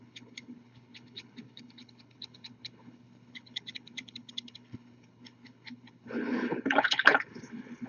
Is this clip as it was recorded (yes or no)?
no